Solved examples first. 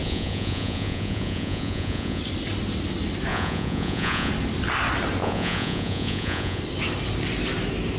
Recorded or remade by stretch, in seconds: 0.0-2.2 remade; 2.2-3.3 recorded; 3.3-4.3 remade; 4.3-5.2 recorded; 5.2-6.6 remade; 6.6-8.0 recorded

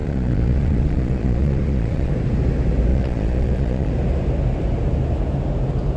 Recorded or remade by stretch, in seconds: 0.0-2.1 remade; 2.1-2.9 recorded; 2.9-3.9 remade; 3.9-6.0 recorded

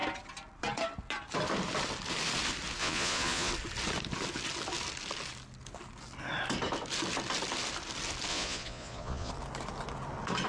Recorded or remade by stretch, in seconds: 0.0-2.8 recorded; 2.8-3.5 remade; 3.5-8.3 recorded; 8.3-9.3 remade; 9.3-10.5 recorded

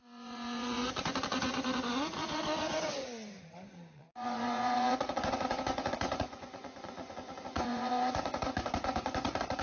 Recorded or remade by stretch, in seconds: 0.0-9.6 remade